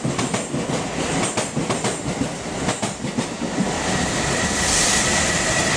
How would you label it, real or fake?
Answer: real